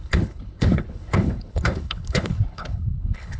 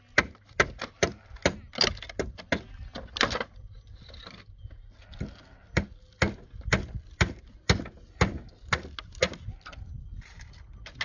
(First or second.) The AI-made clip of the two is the first